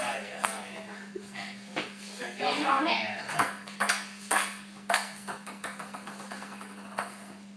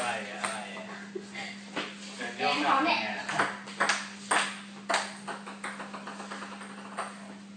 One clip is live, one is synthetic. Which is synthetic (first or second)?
first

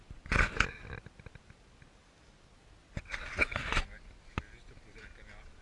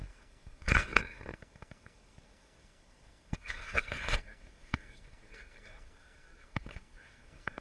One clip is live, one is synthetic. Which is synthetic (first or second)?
second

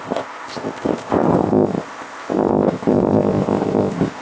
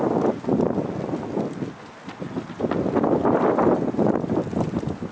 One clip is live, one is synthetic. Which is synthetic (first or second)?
first